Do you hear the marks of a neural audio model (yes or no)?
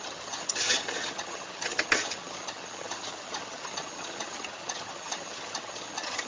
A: yes